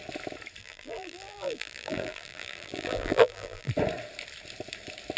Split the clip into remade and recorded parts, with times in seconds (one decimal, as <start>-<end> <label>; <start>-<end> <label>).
0.0-0.6 recorded; 0.6-3.7 remade; 3.7-5.2 recorded